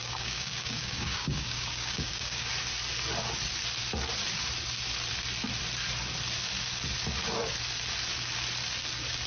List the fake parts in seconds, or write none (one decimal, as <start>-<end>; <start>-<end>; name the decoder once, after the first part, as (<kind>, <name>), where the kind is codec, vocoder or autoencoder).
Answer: 0.0-2.5 (codec, DAC)